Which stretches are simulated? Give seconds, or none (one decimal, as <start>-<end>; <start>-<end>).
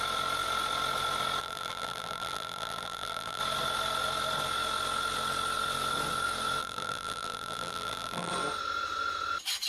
1.4-3.4; 6.6-8.3